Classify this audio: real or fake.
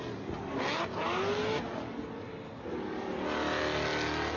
real